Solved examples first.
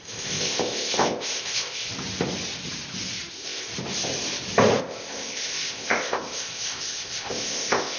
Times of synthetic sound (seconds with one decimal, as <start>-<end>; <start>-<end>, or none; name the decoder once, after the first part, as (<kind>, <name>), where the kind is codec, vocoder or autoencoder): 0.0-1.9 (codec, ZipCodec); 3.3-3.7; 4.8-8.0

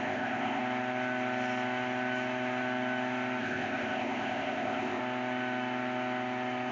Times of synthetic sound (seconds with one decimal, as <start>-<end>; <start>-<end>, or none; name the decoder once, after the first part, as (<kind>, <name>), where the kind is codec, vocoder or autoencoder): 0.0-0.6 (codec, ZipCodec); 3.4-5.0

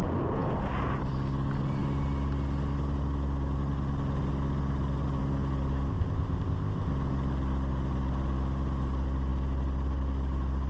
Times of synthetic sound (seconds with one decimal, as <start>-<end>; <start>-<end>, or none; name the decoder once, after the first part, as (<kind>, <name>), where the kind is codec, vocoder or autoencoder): 5.9-6.9 (codec, ZipCodec)

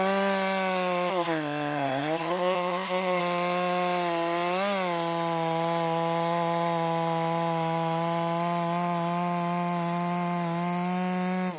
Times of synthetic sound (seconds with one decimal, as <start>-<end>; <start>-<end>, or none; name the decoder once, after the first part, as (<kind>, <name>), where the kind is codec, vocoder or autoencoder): 1.1-3.2 (codec, ZipCodec)

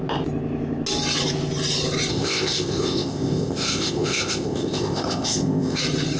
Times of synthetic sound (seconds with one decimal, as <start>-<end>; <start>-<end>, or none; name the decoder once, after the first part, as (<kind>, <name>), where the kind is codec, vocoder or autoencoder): 2.1-5.8 (codec, ZipCodec)

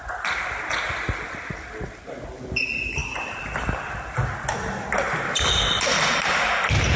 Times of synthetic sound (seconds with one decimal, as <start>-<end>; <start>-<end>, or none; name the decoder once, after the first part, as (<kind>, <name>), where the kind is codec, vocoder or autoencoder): none

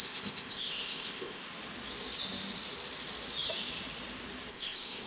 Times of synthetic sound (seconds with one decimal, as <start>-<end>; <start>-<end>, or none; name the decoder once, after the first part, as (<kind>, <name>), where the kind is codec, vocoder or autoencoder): 0.0-1.4 (codec, ZipCodec); 4.5-5.1

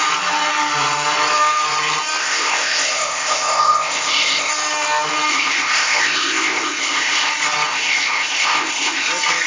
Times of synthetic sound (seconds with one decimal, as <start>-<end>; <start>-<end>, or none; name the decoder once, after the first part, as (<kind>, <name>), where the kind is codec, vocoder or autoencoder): 2.2-4.5 (codec, ZipCodec); 5.3-7.3; 7.7-9.1